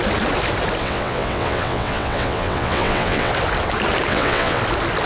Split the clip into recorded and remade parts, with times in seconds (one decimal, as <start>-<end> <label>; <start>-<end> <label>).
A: 0.0-0.8 recorded; 0.8-3.3 remade; 3.3-4.1 recorded; 4.1-4.6 remade; 4.6-5.1 recorded